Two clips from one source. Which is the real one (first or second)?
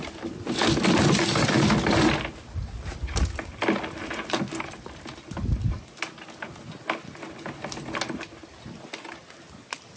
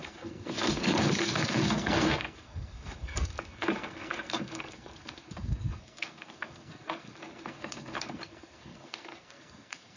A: first